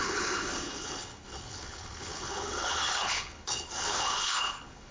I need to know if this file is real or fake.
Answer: fake